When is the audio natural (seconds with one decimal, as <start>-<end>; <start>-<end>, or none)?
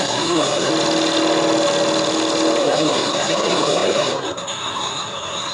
0.7-2.6